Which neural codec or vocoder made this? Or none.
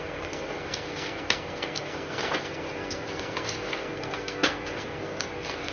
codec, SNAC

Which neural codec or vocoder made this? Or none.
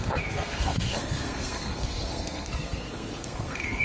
codec, SNAC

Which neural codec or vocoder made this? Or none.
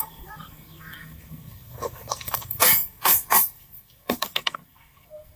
codec, SNAC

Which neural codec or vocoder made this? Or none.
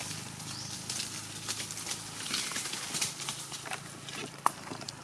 none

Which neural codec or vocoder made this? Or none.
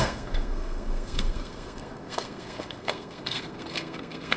codec, SNAC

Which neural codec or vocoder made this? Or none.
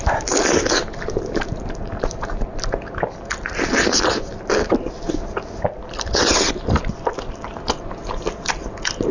none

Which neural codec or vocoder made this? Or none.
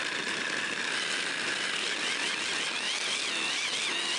none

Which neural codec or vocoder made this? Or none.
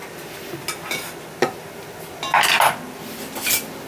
none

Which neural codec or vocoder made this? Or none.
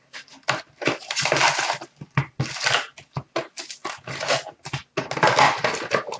none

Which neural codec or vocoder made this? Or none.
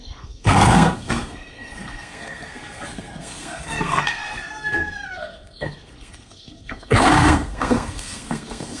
codec, SNAC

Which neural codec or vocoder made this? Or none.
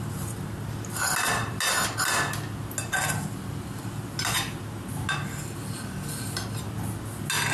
none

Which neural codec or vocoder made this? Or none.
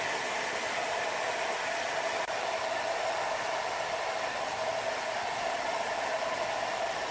none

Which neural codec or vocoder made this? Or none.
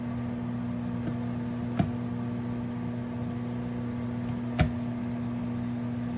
none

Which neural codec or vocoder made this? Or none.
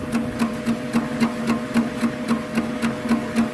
none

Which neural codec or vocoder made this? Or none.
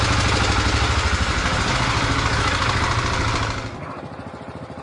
none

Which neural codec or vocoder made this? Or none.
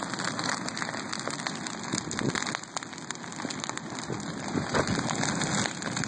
none